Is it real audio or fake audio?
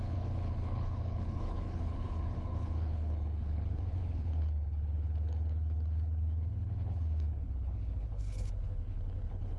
fake